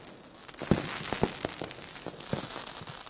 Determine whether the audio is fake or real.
real